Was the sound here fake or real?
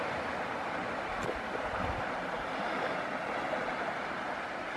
real